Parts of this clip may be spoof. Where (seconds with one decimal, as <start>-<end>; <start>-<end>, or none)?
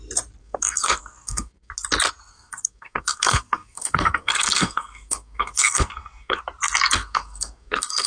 0.4-1.7; 2.3-6.4; 7.0-8.1